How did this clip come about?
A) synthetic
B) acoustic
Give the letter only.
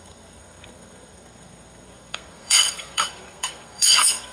A